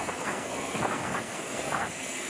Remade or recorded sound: remade